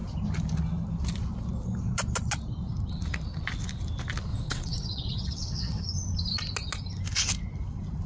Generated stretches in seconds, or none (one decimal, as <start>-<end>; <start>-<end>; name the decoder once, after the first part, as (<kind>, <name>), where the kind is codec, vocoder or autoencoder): 4.3-5.8 (vocoder, WaveNeXt)